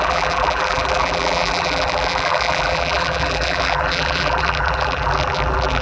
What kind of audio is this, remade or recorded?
remade